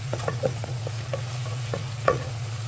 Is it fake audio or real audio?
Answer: fake